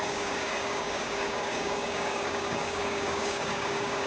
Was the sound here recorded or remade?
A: remade